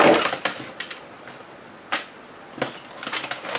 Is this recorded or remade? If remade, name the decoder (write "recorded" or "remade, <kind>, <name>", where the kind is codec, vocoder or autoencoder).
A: recorded